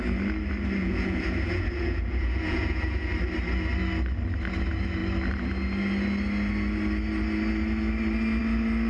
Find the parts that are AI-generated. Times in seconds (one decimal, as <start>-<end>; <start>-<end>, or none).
0.8-3.1